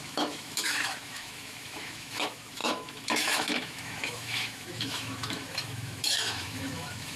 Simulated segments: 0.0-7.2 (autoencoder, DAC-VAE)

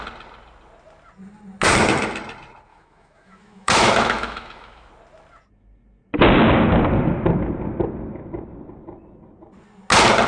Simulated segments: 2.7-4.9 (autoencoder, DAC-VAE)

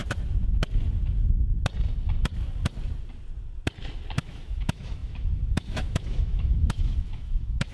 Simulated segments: 4.2-7.7 (autoencoder, DAC-VAE)

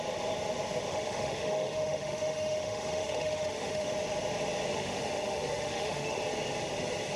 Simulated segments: 0.9-3.9 (autoencoder, DAC-VAE); 4.7-6.2